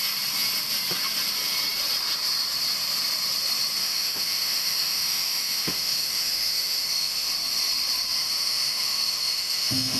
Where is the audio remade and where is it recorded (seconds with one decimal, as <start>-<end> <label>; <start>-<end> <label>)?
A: 0.0-3.8 recorded; 3.8-7.3 remade; 7.3-8.2 recorded; 8.2-10.0 remade